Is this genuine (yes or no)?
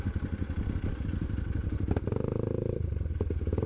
yes